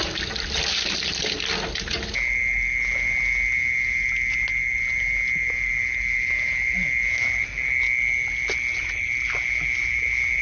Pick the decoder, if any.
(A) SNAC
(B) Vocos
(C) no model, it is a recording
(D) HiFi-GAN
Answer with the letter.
C